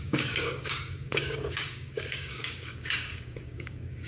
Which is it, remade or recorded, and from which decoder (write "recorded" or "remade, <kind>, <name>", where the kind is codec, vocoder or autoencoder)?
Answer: remade, codec, DAC